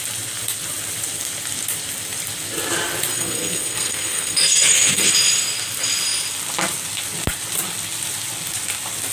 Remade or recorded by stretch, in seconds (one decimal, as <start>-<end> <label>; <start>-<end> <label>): 0.0-3.1 recorded; 3.1-5.1 remade; 5.1-9.1 recorded

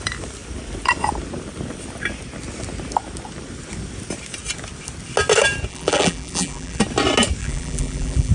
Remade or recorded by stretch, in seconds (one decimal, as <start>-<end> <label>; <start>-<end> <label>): 0.0-5.7 recorded; 5.7-6.8 remade; 6.8-7.4 recorded; 7.4-8.3 remade

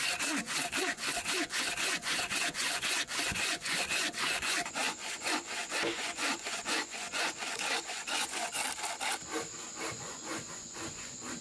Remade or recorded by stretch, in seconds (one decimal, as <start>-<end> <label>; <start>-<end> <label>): 0.0-8.6 remade; 8.6-9.9 recorded; 9.9-11.4 remade

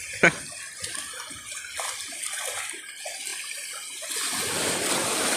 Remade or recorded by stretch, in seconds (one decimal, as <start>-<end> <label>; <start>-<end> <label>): 0.0-5.4 recorded

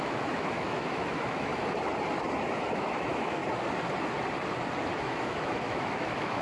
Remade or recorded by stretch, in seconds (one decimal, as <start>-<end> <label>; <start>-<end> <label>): 0.0-1.5 remade; 1.5-2.7 recorded; 2.7-3.4 remade; 3.4-5.0 recorded; 5.0-6.4 remade

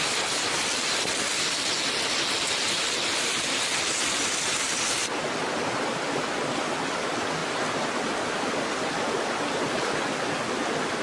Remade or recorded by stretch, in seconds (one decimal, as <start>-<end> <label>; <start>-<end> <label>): 0.0-11.0 recorded

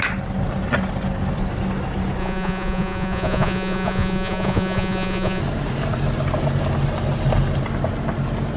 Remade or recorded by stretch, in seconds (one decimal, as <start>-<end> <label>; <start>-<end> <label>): 0.0-2.2 recorded; 2.2-5.4 remade; 5.4-8.6 recorded